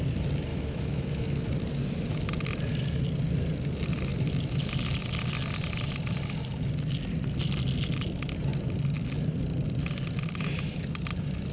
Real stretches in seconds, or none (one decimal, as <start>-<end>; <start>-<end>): 0.0-0.5; 1.5-11.5

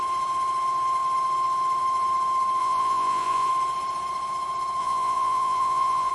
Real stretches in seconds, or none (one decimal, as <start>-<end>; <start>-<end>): 0.0-2.6; 3.5-4.8

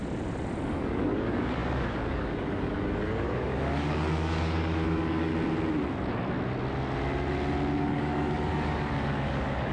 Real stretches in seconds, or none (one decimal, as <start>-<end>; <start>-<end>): 0.0-0.7; 5.3-7.8

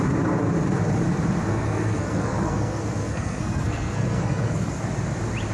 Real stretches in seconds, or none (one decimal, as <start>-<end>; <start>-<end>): 0.0-1.5; 4.8-5.5

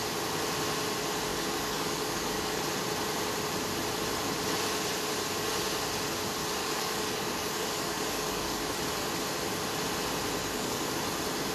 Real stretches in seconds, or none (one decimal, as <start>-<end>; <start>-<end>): 0.0-1.3; 2.6-6.6; 8.8-10.4; 11.0-11.5

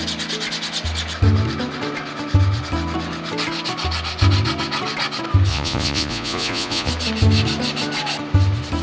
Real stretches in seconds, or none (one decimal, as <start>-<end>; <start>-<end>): 0.0-5.5; 6.9-8.8

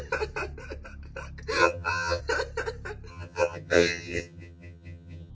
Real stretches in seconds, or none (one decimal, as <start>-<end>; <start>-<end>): 0.0-1.6; 2.2-3.1